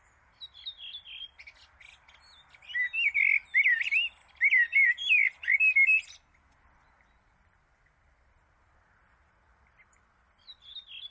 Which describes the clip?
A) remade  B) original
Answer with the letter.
B